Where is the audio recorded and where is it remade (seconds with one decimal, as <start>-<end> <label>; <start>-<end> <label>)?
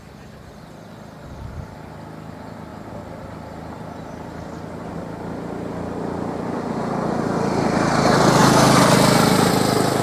0.0-8.4 recorded; 8.4-9.5 remade; 9.5-10.0 recorded